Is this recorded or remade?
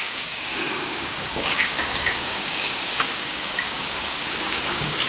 remade